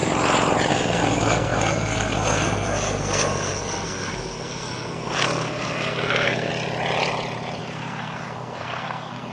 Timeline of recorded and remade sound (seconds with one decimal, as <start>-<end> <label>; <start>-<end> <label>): 0.0-0.7 recorded; 0.7-6.5 remade; 6.5-7.6 recorded; 7.6-9.3 remade

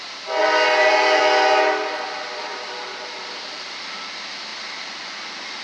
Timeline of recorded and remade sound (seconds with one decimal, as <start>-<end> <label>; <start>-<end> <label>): 0.0-0.4 recorded; 0.4-1.2 remade; 1.2-2.5 recorded; 2.5-4.1 remade; 4.1-4.5 recorded; 4.5-5.6 remade

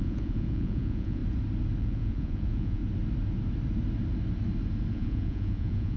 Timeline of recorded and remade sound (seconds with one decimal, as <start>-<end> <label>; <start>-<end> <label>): 0.0-1.2 remade; 1.2-1.8 recorded; 1.8-2.8 remade; 2.8-4.9 recorded; 4.9-6.0 remade

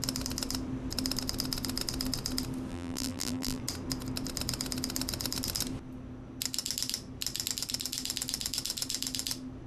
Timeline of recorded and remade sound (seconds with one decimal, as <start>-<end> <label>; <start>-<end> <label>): 0.0-2.7 recorded; 2.7-3.6 remade; 3.6-9.7 recorded

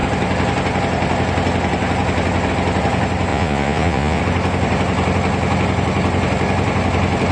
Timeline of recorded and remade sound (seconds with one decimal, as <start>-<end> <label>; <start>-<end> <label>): 0.0-3.3 recorded; 3.3-4.2 remade; 4.2-7.3 recorded

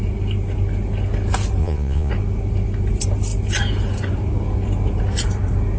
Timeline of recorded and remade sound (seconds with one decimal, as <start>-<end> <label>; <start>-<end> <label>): 0.0-1.6 recorded; 1.6-2.1 remade; 2.1-5.8 recorded

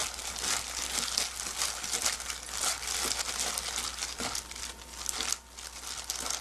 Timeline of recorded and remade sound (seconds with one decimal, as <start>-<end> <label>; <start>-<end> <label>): 0.0-6.4 recorded

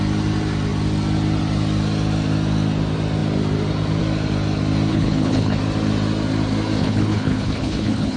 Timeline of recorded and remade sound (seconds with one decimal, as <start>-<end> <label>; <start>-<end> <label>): 0.0-4.9 recorded; 4.9-5.6 remade; 5.6-6.8 recorded; 6.8-8.2 remade